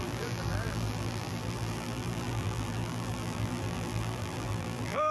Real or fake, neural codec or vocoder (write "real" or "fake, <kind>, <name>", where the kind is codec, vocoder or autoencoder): fake, vocoder, BigVGAN v2